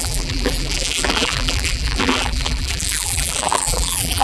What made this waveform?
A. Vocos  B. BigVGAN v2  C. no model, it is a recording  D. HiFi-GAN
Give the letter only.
B